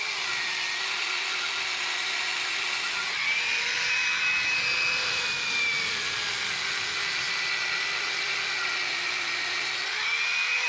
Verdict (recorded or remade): recorded